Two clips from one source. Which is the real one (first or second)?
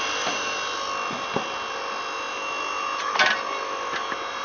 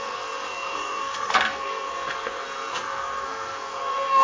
first